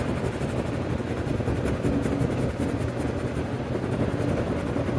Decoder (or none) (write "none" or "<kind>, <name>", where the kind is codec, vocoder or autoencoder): none